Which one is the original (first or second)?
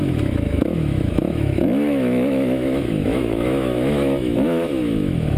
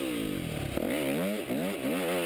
second